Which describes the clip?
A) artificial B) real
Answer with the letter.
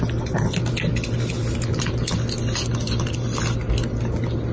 B